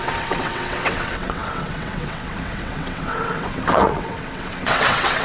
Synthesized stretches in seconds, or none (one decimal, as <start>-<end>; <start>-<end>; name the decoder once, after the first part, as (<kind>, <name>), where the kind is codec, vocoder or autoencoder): 0.0-5.2 (vocoder, WaveNeXt)